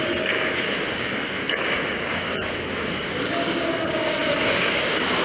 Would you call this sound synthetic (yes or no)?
yes